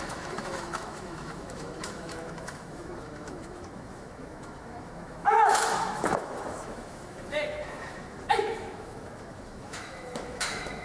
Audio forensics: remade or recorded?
remade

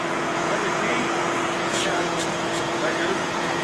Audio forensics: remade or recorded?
remade